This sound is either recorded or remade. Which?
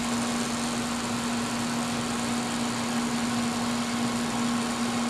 recorded